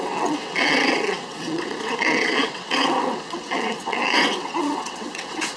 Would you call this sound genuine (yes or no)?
no